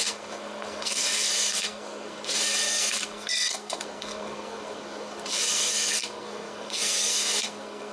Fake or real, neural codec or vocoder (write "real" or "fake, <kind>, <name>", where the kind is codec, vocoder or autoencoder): fake, codec, SNAC